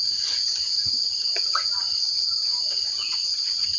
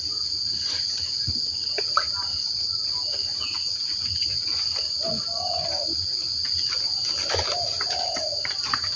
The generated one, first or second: first